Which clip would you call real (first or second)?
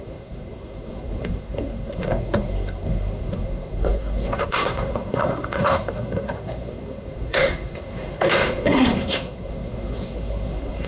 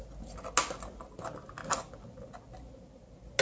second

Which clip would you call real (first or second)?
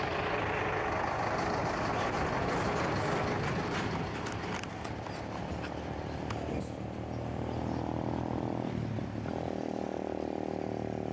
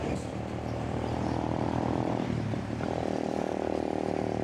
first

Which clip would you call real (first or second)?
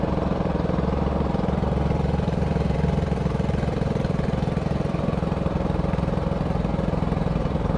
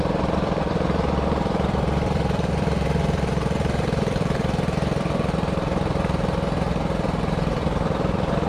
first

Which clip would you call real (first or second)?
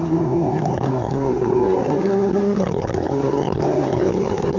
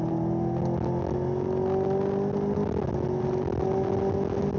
second